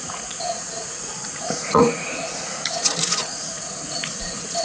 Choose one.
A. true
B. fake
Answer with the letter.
B